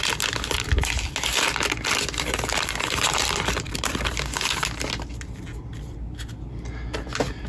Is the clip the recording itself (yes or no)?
yes